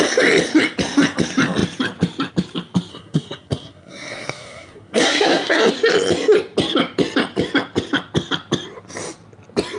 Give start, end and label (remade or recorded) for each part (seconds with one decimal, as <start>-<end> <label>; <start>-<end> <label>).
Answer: 0.0-2.9 recorded; 2.9-5.7 remade; 5.7-9.8 recorded